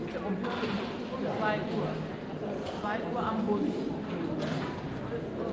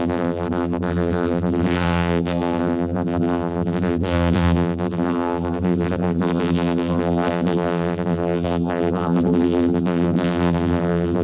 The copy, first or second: second